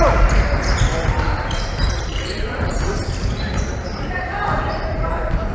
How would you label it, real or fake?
fake